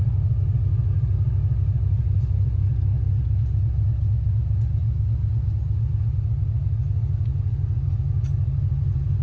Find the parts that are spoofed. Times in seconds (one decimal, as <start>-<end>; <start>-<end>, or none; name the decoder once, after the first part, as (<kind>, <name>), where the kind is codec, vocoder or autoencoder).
none